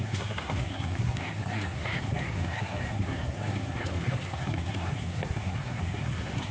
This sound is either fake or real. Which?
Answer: fake